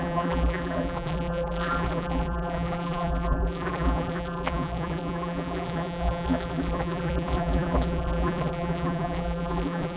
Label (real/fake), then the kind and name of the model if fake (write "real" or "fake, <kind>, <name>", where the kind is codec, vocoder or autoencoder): fake, vocoder, BigVGAN v2